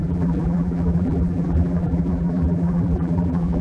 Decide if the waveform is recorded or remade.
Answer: remade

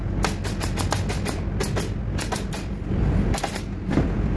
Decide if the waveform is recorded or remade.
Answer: recorded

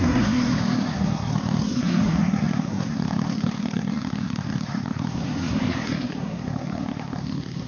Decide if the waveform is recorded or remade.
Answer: remade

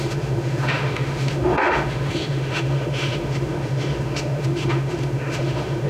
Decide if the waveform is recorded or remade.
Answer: remade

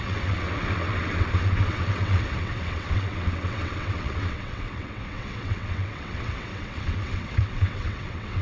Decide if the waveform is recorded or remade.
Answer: remade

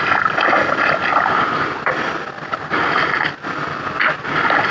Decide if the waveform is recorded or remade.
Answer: recorded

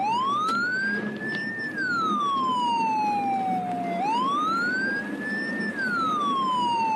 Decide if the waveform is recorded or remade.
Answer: recorded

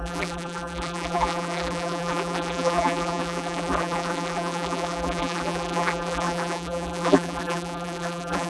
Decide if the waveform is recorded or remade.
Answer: remade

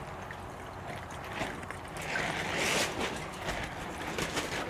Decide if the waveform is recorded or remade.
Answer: recorded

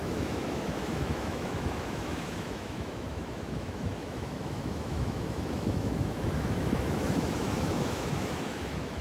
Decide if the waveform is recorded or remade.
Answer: remade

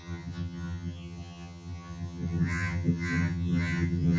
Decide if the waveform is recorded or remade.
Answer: remade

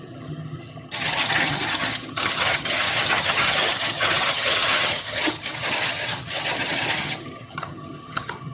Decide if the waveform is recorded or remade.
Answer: remade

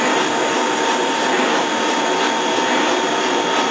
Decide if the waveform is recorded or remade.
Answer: recorded